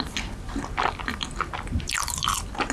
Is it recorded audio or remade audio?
recorded